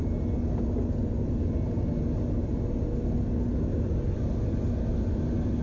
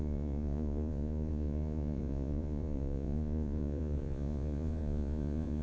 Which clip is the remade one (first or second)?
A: second